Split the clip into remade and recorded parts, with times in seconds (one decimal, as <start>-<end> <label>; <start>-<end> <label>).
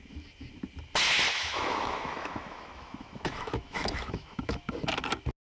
0.0-1.3 recorded; 1.3-4.6 remade; 4.6-5.5 recorded